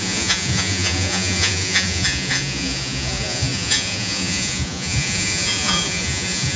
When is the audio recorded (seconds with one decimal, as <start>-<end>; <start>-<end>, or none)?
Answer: none